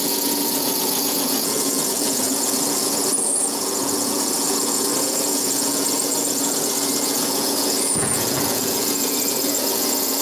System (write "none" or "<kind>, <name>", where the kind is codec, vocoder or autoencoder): vocoder, Vocos